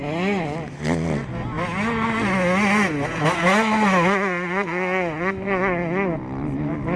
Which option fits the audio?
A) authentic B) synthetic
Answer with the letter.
A